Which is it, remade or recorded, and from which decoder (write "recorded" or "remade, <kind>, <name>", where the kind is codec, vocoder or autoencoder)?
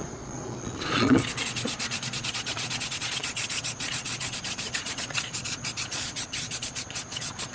remade, vocoder, Vocos